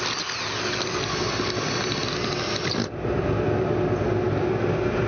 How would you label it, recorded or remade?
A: recorded